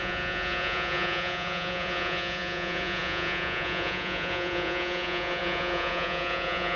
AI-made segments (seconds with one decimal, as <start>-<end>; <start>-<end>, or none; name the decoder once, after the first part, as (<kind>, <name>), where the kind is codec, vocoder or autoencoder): 0.0-6.8 (vocoder, Vocos)